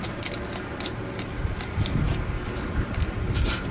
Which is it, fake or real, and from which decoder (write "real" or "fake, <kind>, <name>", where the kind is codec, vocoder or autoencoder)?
real